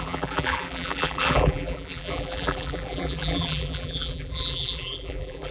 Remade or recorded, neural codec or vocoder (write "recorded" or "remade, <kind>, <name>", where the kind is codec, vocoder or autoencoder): remade, vocoder, BigVGAN v2